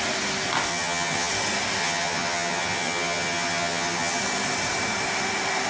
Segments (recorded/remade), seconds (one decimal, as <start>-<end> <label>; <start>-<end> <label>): 0.0-0.7 recorded; 0.7-1.3 remade; 1.3-1.8 recorded; 1.8-4.2 remade; 4.2-5.7 recorded